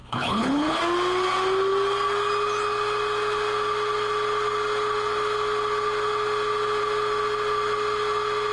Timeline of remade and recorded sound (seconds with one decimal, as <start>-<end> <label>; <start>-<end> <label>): 0.0-0.8 remade; 0.8-8.5 recorded